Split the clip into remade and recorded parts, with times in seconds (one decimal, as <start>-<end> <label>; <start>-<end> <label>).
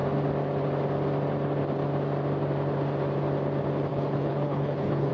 0.0-3.9 recorded; 3.9-5.1 remade